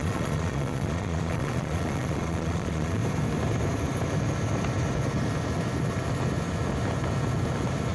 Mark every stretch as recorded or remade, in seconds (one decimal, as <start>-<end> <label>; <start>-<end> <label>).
0.0-3.0 remade; 3.0-7.9 recorded